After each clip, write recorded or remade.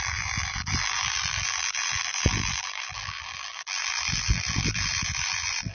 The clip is remade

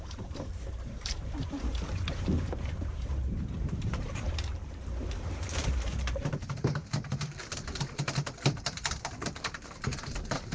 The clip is remade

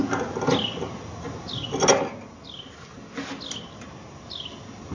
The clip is recorded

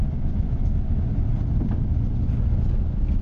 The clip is recorded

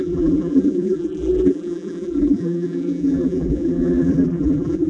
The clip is remade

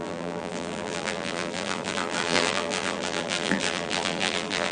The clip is remade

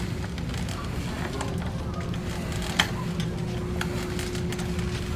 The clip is recorded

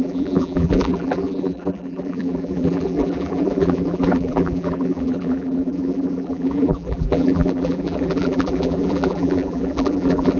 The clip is remade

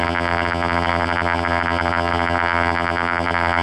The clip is remade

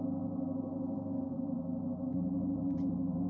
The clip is remade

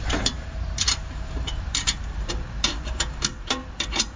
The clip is remade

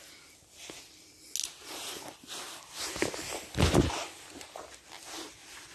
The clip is recorded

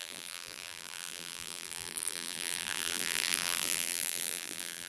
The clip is remade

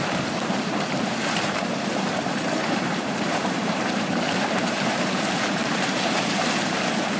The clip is remade